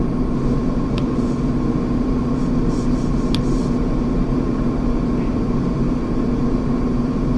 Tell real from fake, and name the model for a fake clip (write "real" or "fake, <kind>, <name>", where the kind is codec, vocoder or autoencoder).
real